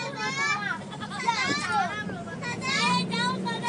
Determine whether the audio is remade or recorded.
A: recorded